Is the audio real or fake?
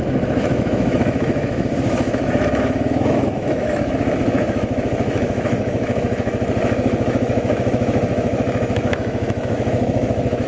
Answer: fake